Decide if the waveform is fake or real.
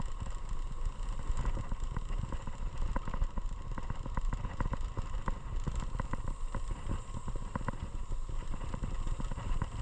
real